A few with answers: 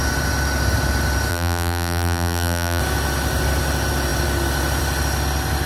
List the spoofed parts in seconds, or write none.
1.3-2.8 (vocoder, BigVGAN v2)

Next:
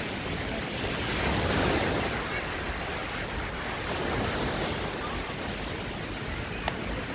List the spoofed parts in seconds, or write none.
3.0-3.6 (vocoder, BigVGAN v2); 6.2-7.1

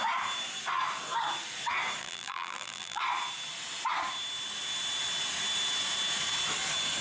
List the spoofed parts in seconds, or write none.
2.0-3.0 (vocoder, BigVGAN v2)

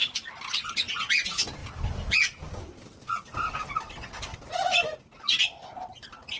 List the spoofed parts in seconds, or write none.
0.0-0.9 (vocoder, BigVGAN v2)

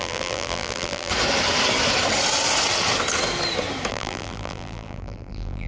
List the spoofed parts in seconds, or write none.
0.0-1.1 (vocoder, BigVGAN v2); 3.9-5.7